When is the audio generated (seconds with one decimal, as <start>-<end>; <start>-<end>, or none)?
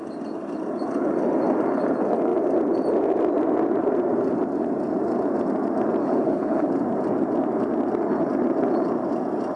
6.0-6.7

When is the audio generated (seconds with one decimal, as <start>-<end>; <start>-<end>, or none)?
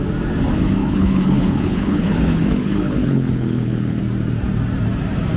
0.8-4.0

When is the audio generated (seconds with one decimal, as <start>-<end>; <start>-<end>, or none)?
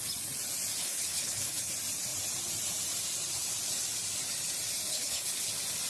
0.8-1.7; 4.9-5.5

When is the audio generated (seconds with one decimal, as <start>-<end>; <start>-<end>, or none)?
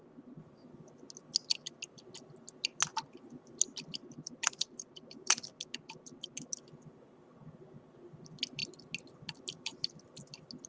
none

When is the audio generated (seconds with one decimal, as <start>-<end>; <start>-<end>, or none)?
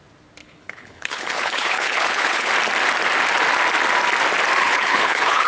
0.4-2.5; 4.6-5.5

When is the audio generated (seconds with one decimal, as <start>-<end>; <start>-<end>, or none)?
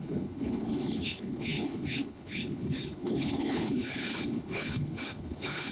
0.0-5.7